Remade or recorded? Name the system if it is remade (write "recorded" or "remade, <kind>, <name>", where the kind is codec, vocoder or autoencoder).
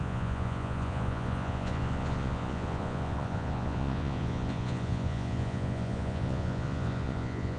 remade, vocoder, Vocos